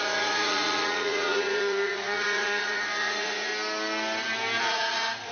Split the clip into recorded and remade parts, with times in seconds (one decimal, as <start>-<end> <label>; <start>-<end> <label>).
0.0-3.5 remade; 3.5-4.6 recorded; 4.6-5.3 remade